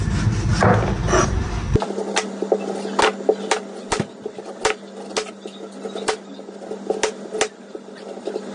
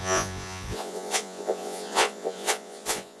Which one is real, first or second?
first